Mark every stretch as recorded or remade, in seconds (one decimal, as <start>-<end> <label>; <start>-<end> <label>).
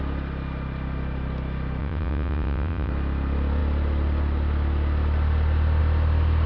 0.0-1.8 recorded; 1.8-2.9 remade; 2.9-6.5 recorded